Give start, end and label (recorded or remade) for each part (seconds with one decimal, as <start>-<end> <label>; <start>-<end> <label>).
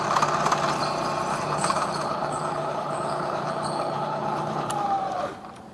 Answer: 0.0-1.3 recorded; 1.3-4.7 remade; 4.7-5.7 recorded